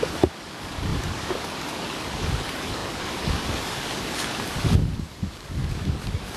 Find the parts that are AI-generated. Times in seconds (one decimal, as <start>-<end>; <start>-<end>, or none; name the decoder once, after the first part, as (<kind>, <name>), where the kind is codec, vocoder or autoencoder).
0.0-6.4 (codec, DAC)